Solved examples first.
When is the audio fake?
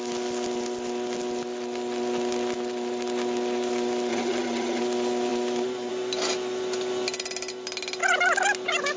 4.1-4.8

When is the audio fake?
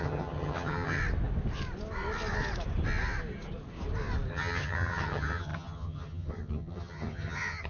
0.0-1.0; 4.3-7.7